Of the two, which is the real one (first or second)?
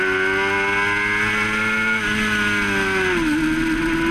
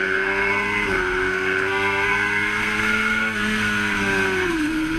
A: first